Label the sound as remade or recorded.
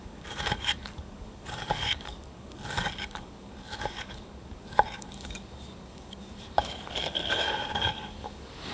remade